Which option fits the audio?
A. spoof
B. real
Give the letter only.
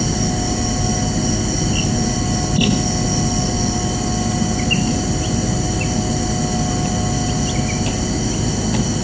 B